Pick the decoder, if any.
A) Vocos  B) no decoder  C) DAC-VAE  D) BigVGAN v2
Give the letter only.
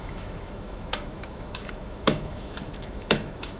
C